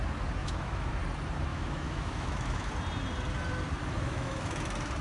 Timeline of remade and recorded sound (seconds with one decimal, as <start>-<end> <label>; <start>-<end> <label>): 0.0-0.4 recorded; 0.4-0.9 remade; 0.9-1.5 recorded; 1.5-2.7 remade; 2.7-3.8 recorded; 3.8-4.6 remade; 4.6-5.0 recorded